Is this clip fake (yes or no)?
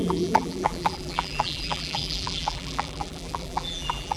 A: yes